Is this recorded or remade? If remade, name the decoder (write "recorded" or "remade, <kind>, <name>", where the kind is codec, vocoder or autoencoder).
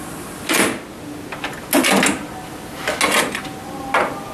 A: recorded